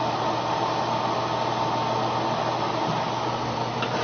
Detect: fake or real real